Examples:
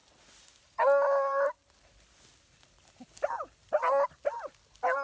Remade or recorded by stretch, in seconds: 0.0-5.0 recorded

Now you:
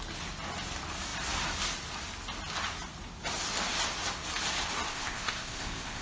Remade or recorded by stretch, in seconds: 0.0-4.9 recorded; 4.9-6.0 remade